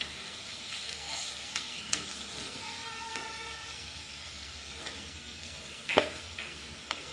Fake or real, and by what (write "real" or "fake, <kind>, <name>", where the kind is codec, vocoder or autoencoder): fake, codec, SNAC